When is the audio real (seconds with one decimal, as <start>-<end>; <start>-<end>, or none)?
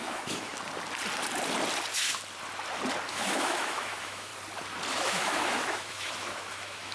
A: 0.5-3.1; 4.3-4.9